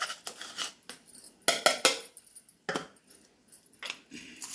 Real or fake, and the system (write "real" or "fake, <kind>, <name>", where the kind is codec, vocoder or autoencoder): real